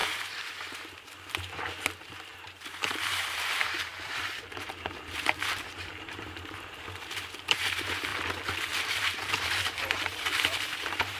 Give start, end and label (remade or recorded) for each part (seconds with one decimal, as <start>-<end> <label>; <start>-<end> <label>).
0.0-8.1 remade; 8.1-8.9 recorded; 8.9-11.2 remade